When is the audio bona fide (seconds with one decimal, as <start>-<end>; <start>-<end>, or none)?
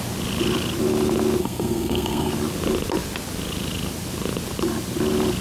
0.0-1.4; 2.3-5.4